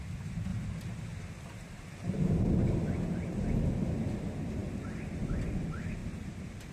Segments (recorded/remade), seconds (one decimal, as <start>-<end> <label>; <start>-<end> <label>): 0.0-0.5 recorded; 0.5-2.3 remade; 2.3-6.0 recorded; 6.0-6.7 remade

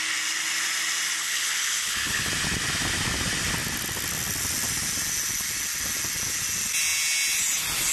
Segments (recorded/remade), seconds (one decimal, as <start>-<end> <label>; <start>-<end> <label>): 0.0-1.2 recorded; 1.2-2.3 remade; 2.3-7.9 recorded

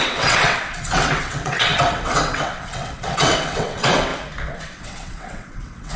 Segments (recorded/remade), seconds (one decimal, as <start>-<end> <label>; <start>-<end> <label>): 0.0-4.1 remade; 4.1-4.6 recorded; 4.6-6.0 remade